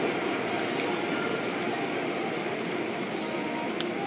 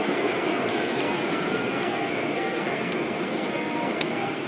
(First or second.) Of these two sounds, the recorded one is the first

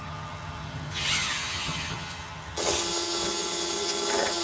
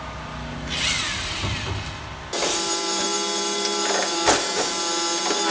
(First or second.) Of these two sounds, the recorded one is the second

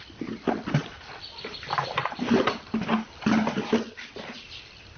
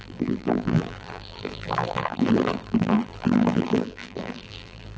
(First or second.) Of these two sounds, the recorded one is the first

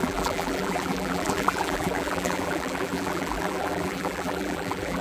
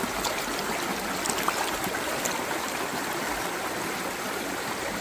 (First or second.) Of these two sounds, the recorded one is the second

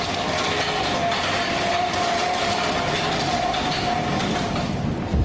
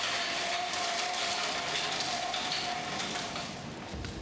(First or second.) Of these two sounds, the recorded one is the second